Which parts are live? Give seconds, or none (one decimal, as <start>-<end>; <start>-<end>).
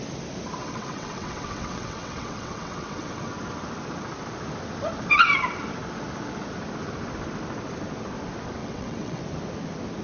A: 0.0-0.6; 3.3-8.6; 9.2-10.0